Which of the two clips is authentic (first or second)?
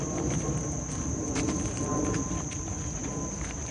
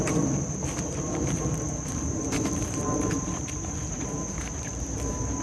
first